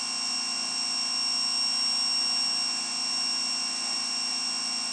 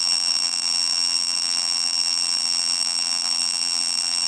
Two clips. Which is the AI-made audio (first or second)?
second